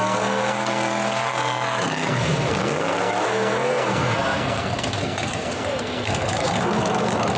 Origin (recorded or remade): remade